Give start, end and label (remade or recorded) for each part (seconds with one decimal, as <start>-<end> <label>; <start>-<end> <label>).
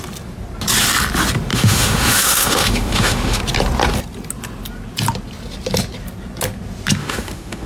0.0-1.5 recorded; 1.5-3.4 remade; 3.4-7.0 recorded; 7.0-7.7 remade